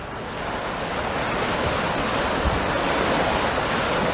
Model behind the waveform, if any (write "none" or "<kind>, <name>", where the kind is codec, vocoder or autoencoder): none